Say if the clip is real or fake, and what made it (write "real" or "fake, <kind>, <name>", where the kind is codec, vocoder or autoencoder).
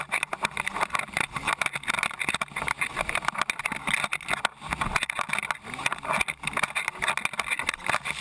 real